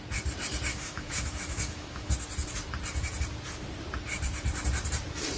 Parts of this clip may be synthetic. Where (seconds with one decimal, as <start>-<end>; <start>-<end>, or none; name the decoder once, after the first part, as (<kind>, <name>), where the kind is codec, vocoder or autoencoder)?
0.7-2.1 (autoencoder, DAC-VAE)